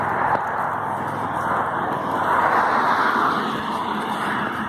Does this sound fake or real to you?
real